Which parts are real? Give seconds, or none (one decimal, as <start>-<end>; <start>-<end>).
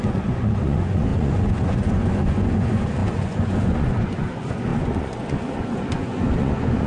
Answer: none